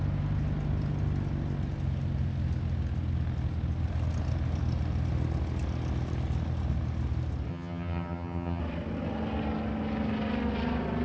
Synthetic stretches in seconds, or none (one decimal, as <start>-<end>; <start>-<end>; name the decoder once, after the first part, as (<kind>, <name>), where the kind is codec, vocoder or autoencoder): 7.5-8.6 (vocoder, HiFi-GAN)